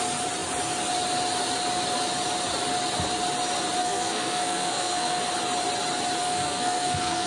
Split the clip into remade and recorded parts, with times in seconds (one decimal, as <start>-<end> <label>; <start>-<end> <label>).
0.0-3.8 recorded; 3.8-5.2 remade; 5.2-6.2 recorded; 6.2-7.3 remade